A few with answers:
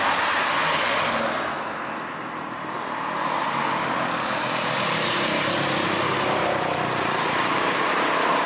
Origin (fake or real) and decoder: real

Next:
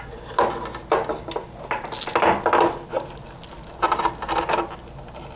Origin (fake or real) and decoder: real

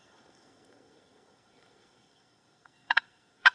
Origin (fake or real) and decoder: fake, codec, SNAC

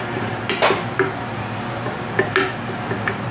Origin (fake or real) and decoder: real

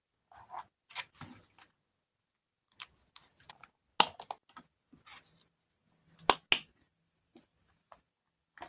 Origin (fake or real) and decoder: real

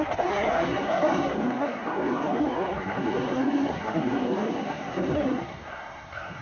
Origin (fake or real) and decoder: fake, codec, SNAC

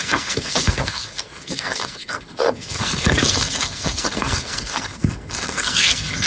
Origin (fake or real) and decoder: fake, codec, SNAC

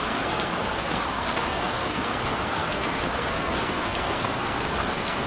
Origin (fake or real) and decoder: fake, codec, SNAC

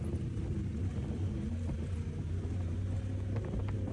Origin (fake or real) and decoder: real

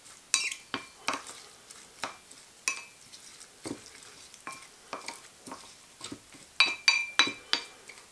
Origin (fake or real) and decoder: real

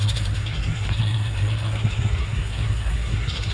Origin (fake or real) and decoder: fake, codec, SNAC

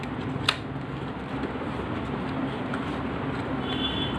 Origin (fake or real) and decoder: real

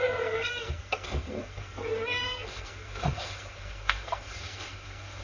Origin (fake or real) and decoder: fake, codec, SNAC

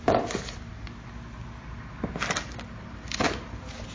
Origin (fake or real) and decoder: real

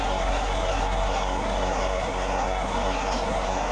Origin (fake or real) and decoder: fake, codec, SNAC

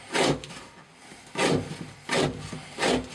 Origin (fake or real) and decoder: real